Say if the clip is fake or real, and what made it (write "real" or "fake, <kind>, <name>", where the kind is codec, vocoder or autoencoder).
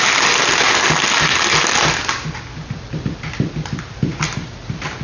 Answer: real